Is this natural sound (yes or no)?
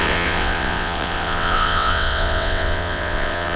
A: no